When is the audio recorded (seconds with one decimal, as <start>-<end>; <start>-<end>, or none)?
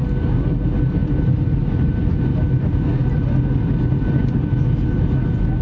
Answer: 0.0-1.0; 2.0-5.6